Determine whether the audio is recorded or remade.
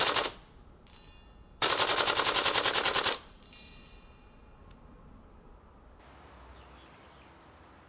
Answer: recorded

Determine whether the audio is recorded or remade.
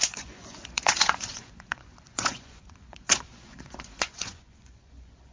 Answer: remade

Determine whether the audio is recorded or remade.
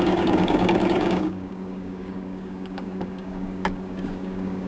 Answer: remade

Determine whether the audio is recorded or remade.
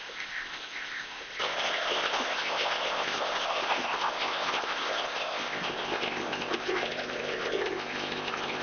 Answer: remade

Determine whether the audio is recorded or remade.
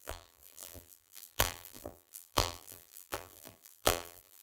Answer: remade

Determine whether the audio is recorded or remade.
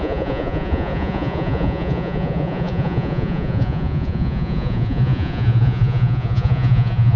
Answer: remade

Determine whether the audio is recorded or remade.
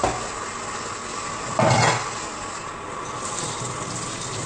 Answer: recorded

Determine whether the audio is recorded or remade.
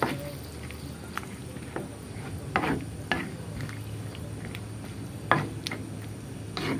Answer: recorded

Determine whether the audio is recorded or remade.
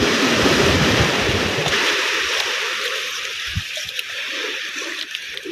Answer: remade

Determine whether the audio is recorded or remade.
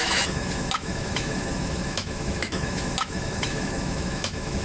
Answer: remade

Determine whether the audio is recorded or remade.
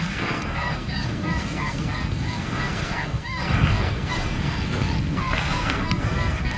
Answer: remade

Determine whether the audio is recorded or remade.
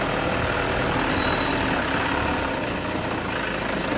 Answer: recorded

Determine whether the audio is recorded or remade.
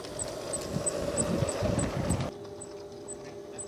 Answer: recorded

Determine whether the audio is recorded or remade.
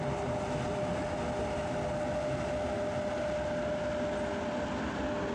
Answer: recorded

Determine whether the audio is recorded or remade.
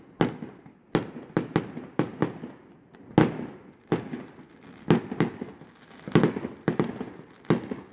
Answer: recorded